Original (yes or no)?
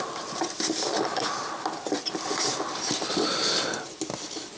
yes